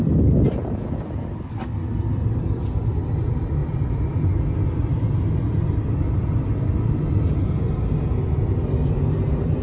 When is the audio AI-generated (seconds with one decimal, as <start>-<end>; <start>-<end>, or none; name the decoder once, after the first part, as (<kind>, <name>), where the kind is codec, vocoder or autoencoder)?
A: none